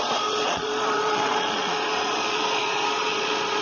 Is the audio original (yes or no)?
no